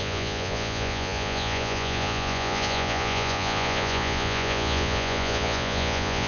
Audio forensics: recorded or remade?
remade